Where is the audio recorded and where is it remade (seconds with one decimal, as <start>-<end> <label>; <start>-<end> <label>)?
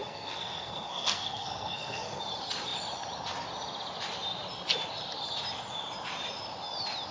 0.0-2.2 remade; 2.2-7.1 recorded